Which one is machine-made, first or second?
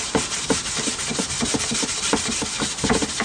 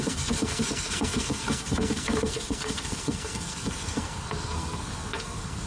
second